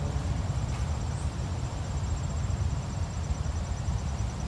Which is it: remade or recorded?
recorded